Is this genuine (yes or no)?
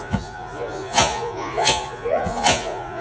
no